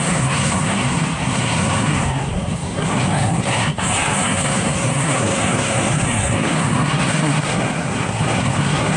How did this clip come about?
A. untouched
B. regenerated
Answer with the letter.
B